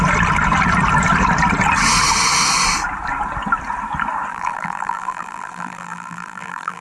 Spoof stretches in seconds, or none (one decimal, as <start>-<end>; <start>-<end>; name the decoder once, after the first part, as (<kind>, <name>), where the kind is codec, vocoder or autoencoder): 4.3-6.8 (vocoder, BigVGAN v2)